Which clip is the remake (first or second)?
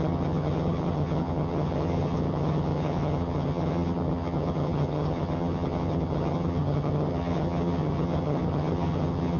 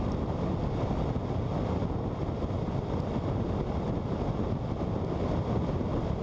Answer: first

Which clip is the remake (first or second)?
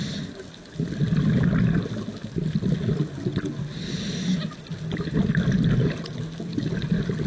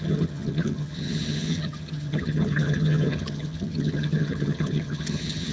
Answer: second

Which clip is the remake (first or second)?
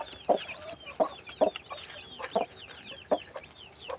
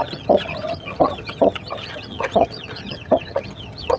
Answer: second